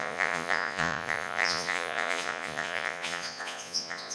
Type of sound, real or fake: fake